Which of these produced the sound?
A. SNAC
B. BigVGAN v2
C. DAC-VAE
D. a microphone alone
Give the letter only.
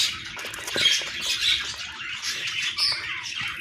D